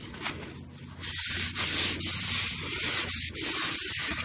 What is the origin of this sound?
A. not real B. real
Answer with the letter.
B